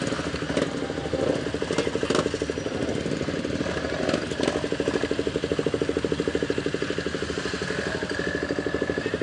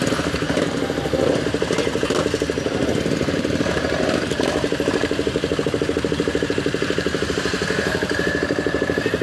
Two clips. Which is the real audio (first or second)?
first